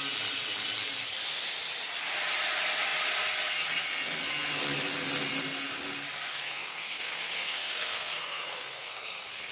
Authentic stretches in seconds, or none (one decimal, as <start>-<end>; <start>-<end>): 0.0-6.3